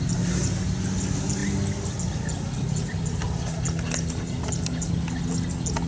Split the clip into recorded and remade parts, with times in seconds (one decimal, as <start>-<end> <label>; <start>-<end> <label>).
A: 0.0-5.9 recorded